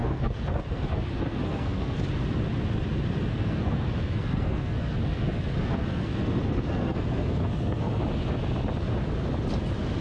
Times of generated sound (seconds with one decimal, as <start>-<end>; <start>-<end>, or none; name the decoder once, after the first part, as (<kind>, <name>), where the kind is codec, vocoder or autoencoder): 0.0-2.0 (codec, SNAC); 3.3-8.0